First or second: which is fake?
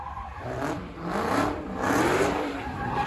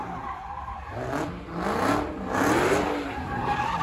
first